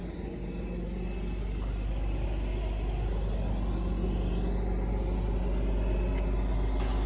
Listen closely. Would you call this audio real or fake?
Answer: real